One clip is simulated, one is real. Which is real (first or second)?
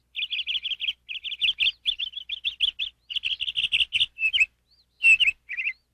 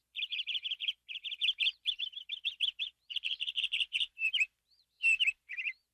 first